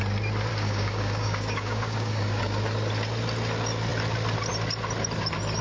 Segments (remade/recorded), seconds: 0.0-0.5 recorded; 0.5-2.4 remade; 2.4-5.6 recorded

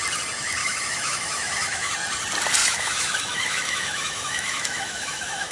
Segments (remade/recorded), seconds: 0.0-0.6 recorded; 0.6-1.9 remade; 1.9-2.6 recorded; 2.6-5.5 remade

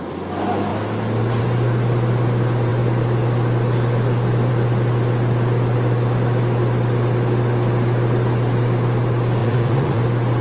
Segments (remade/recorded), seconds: 0.0-9.4 recorded; 9.4-10.0 remade; 10.0-10.4 recorded